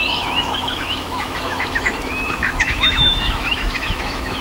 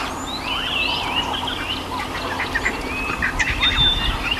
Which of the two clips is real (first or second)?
second